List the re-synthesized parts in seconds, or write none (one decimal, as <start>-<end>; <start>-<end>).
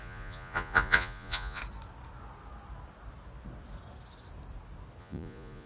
0.0-1.6; 5.0-5.7